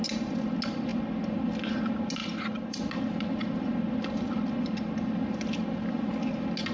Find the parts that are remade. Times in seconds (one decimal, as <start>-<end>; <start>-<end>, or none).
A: 2.2-2.8